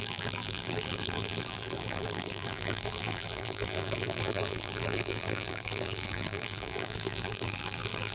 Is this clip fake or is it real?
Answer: fake